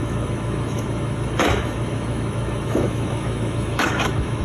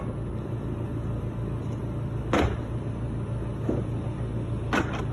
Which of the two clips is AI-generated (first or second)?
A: first